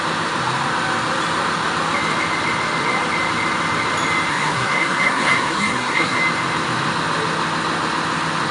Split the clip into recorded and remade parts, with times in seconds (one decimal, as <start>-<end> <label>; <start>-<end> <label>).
0.0-4.3 recorded; 4.3-6.2 remade; 6.2-8.5 recorded